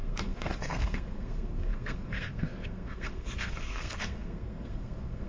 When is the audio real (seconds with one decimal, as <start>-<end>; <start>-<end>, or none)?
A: none